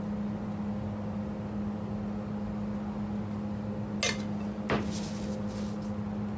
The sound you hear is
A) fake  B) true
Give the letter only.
B